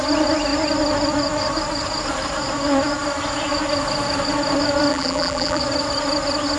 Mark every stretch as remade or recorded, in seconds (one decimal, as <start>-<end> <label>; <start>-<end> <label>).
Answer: 0.0-4.9 recorded; 4.9-5.6 remade; 5.6-6.6 recorded